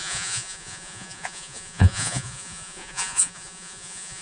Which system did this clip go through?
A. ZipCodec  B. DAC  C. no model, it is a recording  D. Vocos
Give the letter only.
D